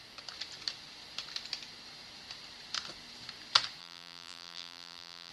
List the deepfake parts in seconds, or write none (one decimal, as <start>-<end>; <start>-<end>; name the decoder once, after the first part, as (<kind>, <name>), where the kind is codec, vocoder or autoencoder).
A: 3.8-5.3 (vocoder, BigVGAN v2)